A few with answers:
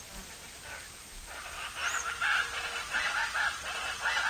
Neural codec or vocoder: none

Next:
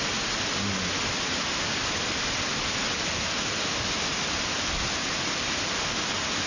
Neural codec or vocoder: none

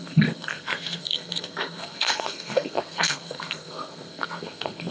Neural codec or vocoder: codec, SNAC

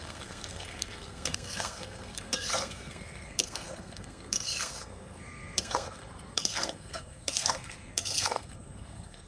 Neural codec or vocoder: codec, SNAC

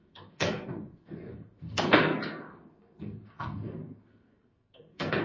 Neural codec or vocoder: codec, SNAC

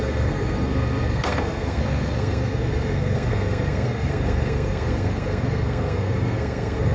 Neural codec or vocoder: codec, SNAC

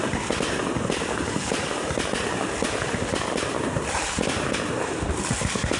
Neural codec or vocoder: none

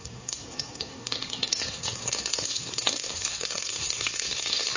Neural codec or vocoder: codec, SNAC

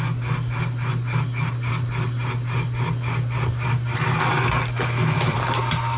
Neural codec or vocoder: none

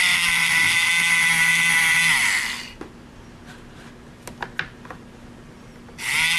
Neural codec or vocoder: none